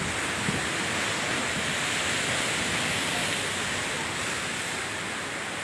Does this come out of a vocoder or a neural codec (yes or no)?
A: no